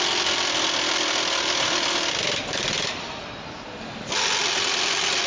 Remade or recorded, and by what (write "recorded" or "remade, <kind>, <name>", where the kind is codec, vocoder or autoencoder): recorded